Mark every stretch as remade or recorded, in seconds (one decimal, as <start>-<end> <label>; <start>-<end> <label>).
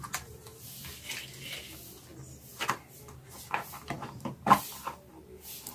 0.0-5.7 recorded